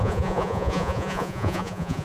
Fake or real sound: fake